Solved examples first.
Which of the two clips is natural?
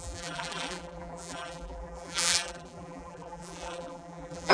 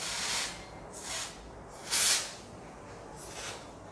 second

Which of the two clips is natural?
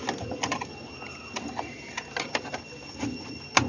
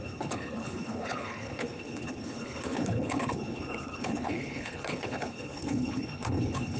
first